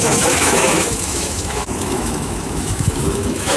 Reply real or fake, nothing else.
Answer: fake